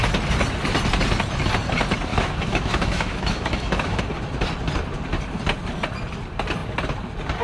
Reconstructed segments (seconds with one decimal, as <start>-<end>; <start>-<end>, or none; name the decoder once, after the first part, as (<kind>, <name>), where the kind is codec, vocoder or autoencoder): 2.1-4.0 (autoencoder, DAC-VAE)